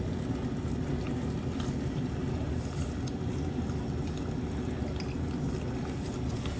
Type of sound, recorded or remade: recorded